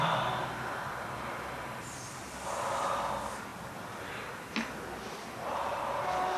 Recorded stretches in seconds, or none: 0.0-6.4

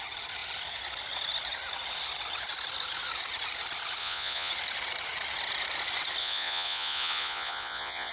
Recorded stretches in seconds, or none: 0.0-4.0; 4.5-6.2

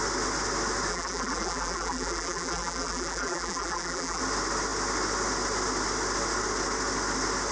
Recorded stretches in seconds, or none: 0.0-0.9; 4.2-7.5

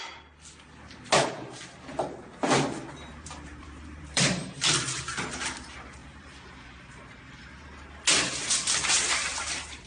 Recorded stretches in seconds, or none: 0.0-3.1; 5.0-6.0; 7.5-9.9

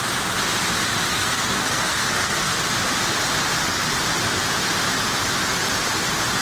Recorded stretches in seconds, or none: 0.0-1.1; 2.6-6.4